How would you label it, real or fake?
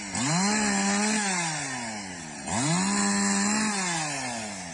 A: real